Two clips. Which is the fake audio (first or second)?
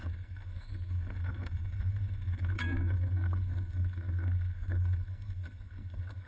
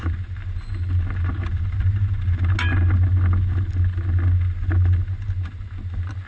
first